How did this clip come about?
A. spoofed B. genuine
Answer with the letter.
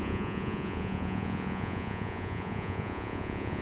A